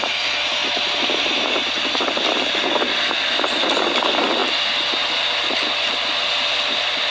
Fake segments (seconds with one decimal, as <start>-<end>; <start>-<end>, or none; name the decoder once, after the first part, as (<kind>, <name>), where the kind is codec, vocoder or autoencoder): none

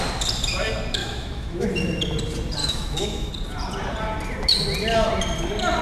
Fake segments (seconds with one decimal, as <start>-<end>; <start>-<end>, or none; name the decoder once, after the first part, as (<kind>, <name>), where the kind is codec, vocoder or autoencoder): 1.0-1.7 (autoencoder, DAC-VAE); 2.6-3.3

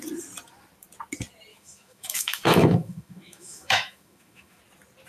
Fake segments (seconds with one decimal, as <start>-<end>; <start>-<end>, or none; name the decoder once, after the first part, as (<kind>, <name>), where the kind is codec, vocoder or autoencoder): 1.5-4.6 (autoencoder, DAC-VAE)

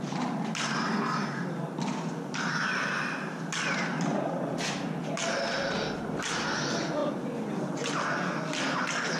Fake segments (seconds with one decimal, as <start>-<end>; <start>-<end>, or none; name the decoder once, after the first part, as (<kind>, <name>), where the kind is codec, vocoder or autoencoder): none

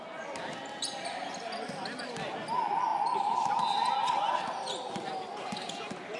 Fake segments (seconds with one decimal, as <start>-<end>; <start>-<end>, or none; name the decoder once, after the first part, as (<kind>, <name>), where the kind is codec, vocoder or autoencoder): none

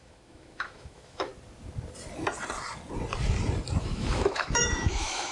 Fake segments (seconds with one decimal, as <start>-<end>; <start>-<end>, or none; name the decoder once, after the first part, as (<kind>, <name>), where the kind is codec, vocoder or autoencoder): 0.0-1.3 (autoencoder, DAC-VAE); 3.8-5.3

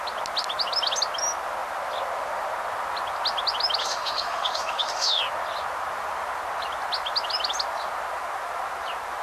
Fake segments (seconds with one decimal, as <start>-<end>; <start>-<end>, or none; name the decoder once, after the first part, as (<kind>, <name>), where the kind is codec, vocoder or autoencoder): 3.8-5.2 (autoencoder, DAC-VAE)

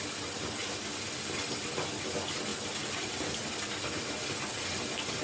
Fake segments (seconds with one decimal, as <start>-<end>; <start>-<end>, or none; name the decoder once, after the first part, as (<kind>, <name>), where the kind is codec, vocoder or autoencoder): none